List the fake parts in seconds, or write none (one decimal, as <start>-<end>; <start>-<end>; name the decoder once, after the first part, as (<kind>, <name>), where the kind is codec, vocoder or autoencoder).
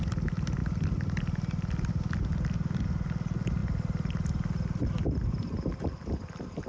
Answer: none